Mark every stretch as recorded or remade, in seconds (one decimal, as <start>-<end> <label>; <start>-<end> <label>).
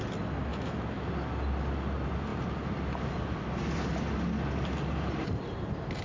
0.0-0.5 recorded; 0.5-1.1 remade; 1.1-6.0 recorded